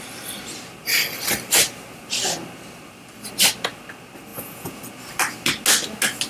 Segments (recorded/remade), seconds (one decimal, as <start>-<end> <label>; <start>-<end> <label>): 0.0-4.3 recorded; 4.3-4.8 remade; 4.8-6.3 recorded